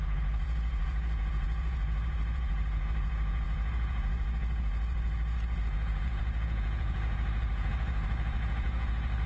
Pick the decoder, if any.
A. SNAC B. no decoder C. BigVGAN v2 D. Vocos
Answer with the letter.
D